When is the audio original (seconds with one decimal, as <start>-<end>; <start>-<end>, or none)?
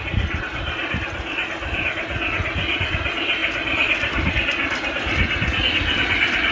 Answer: 0.0-3.4; 4.3-6.5